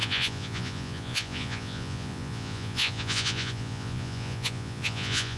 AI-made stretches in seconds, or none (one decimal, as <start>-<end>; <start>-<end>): 0.0-5.4